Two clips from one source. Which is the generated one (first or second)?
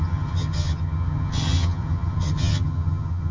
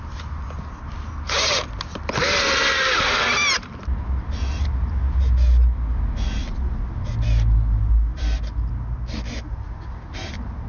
first